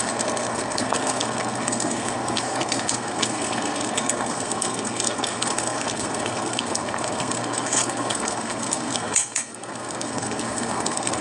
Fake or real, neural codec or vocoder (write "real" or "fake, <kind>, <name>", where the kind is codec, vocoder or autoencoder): fake, codec, SNAC